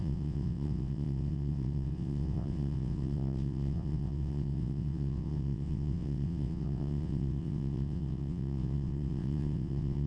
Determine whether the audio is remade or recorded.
remade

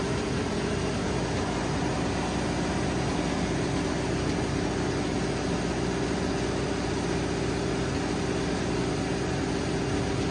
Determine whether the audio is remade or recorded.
recorded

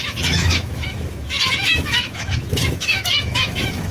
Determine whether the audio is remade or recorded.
remade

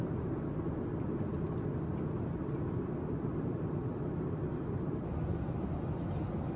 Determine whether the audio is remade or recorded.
recorded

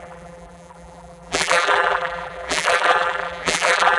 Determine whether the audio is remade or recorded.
remade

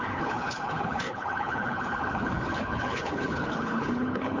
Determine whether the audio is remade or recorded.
remade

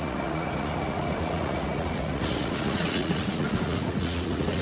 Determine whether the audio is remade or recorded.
remade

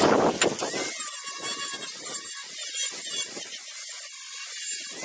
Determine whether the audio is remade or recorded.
recorded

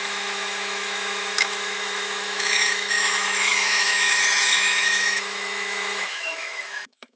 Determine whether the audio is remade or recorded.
remade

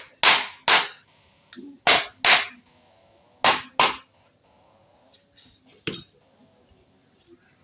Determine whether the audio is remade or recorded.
recorded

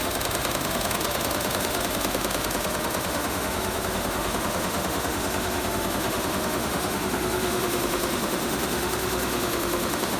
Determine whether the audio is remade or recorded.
remade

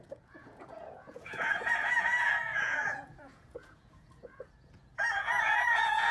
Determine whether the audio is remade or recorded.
remade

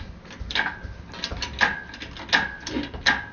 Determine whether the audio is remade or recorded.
recorded